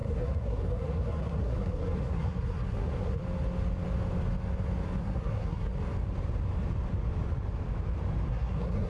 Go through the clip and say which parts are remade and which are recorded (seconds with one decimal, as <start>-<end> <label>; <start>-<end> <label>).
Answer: 0.0-3.2 remade; 3.2-5.0 recorded; 5.0-5.7 remade; 5.7-8.3 recorded; 8.3-8.9 remade